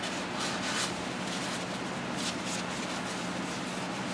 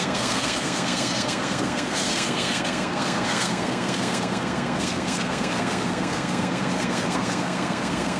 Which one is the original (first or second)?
first